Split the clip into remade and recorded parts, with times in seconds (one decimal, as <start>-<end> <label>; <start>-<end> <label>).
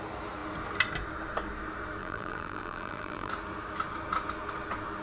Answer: 0.0-2.0 recorded; 2.0-3.3 remade; 3.3-5.0 recorded